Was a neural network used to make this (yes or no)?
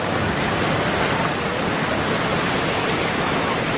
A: no